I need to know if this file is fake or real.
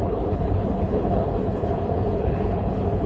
fake